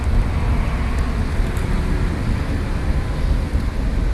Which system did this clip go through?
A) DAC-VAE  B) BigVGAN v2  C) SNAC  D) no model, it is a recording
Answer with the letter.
D